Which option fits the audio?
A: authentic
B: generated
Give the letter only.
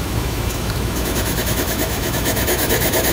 B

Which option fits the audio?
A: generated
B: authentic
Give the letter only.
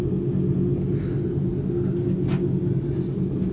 B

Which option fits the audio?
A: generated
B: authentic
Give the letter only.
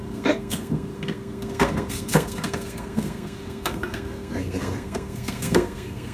A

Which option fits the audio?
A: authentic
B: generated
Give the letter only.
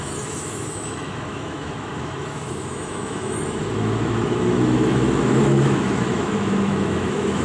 B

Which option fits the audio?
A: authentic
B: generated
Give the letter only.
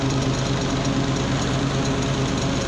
A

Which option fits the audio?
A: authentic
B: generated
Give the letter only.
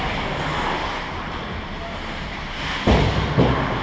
A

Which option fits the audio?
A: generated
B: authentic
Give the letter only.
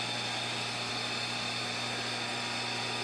B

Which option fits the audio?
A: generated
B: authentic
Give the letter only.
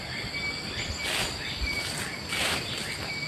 B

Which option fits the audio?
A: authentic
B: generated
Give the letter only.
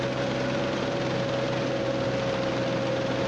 A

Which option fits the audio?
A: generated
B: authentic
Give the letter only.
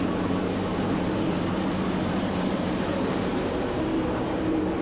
A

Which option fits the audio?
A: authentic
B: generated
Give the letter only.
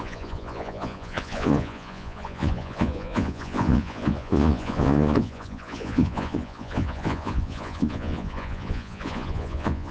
B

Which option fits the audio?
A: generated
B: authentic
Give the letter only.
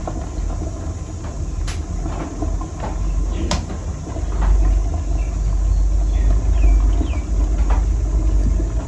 B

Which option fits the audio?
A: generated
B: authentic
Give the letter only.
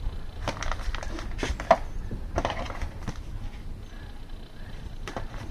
B